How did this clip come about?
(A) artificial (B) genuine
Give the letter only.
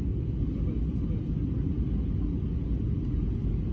B